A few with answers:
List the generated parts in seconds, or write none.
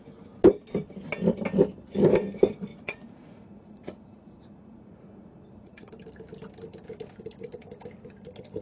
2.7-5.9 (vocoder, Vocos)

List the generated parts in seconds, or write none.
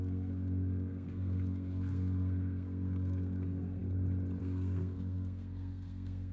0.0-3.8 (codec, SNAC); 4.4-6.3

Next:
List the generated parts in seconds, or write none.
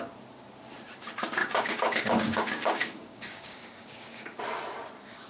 1.4-4.4 (codec, DAC)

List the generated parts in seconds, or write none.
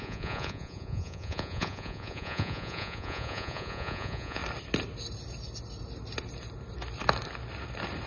0.0-4.4 (vocoder, Vocos)